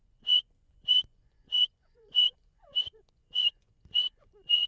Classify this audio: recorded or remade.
remade